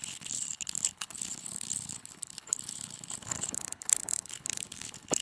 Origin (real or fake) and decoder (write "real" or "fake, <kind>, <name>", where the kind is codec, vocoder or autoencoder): fake, codec, HILCodec